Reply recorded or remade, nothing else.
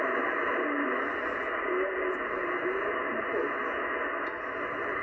recorded